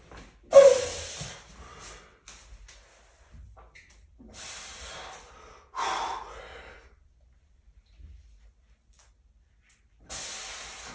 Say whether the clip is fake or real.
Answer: real